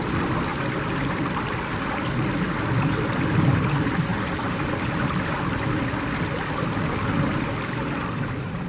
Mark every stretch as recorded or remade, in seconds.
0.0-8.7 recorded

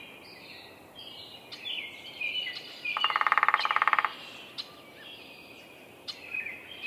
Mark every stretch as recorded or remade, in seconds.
0.0-0.8 recorded; 0.8-1.4 remade; 1.4-6.9 recorded

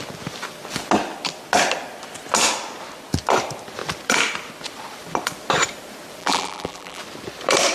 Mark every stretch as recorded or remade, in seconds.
0.0-6.2 recorded; 6.2-7.0 remade; 7.0-7.7 recorded

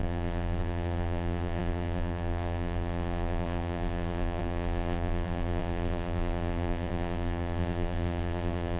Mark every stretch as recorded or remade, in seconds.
0.0-8.8 remade